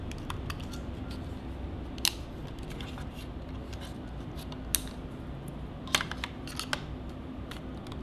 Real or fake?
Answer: real